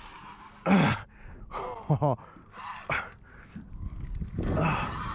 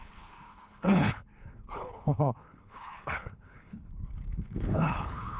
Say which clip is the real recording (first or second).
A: first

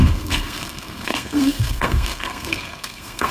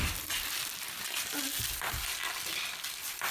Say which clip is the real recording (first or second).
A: second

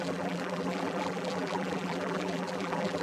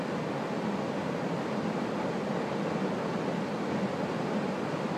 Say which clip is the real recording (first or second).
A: second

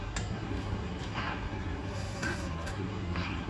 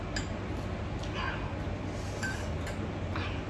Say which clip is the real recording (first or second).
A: second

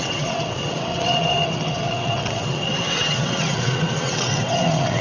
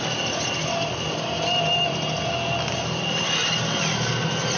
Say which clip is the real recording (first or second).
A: second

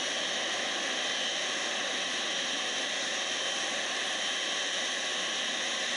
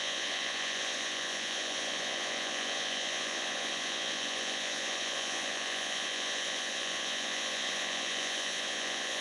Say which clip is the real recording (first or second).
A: first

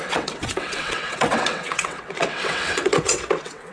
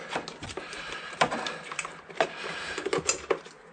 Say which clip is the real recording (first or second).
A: second